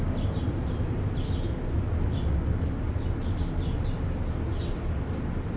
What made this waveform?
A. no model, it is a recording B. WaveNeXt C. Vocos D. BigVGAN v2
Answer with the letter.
A